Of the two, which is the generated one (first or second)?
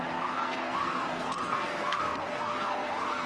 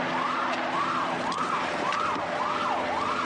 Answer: first